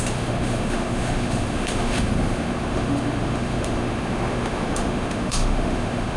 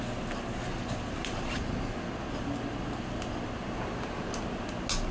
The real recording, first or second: second